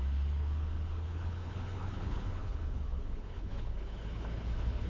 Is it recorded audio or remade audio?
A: remade